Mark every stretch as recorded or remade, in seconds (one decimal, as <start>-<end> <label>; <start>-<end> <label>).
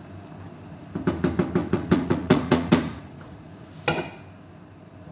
0.0-1.6 recorded; 1.6-3.7 remade; 3.7-5.1 recorded